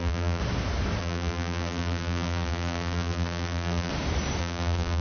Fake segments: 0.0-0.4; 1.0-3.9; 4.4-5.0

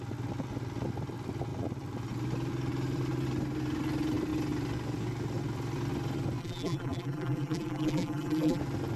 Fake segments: 6.4-8.6